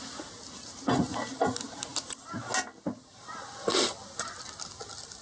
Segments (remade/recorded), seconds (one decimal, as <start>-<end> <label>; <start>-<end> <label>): 0.0-5.2 recorded